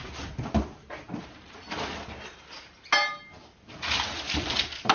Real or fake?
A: real